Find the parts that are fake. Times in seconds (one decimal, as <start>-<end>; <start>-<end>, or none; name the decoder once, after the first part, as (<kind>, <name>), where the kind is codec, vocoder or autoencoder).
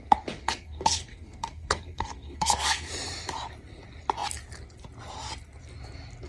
0.4-2.9 (codec, SNAC)